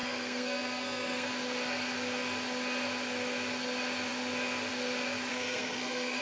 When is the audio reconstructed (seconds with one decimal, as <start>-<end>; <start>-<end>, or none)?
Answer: 0.0-1.3; 5.3-6.2